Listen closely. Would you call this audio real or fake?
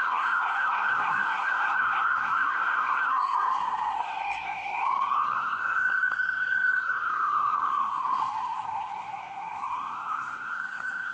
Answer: fake